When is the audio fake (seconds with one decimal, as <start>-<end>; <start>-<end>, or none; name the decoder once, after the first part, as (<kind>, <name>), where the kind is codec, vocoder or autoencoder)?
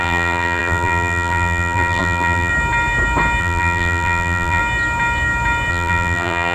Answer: 0.0-2.5 (vocoder, BigVGAN v2); 3.4-4.6; 5.7-6.5